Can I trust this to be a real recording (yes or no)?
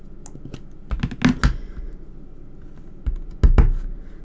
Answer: yes